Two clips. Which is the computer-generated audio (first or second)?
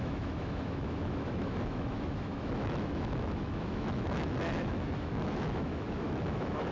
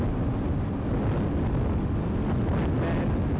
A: first